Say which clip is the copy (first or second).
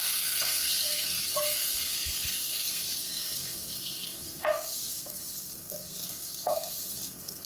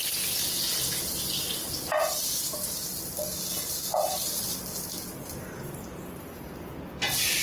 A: first